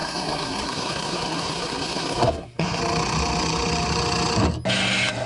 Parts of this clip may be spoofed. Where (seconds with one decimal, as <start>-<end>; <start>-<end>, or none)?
0.0-2.8